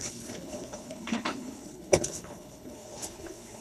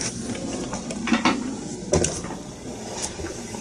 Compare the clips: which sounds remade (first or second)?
first